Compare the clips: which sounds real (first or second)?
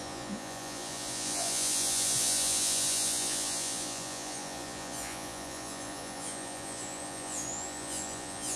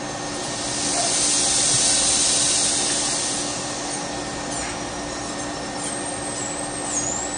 second